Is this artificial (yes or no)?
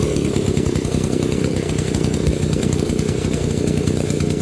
yes